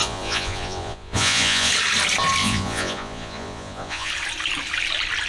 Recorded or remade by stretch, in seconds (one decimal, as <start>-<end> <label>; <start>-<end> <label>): 0.0-1.7 remade; 1.7-2.4 recorded; 2.4-4.1 remade; 4.1-5.3 recorded